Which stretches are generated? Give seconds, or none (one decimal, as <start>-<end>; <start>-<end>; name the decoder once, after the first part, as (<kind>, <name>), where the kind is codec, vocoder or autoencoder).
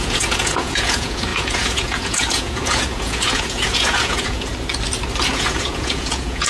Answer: 0.0-4.5 (vocoder, Vocos); 5.3-6.5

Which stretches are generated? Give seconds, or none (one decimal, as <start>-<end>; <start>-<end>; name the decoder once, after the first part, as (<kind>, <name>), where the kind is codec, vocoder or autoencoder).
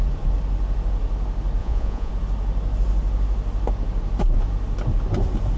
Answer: 1.6-2.1 (vocoder, Vocos)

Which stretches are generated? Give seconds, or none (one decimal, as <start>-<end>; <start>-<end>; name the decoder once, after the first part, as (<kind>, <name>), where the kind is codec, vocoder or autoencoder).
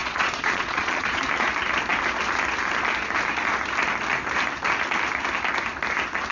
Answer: 0.0-1.2 (vocoder, Vocos)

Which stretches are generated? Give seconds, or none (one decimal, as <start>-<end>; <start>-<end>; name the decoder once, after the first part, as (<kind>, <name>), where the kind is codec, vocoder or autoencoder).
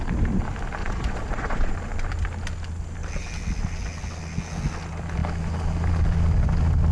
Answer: 0.8-1.7 (vocoder, Vocos)